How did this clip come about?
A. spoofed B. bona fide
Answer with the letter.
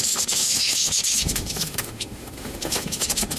A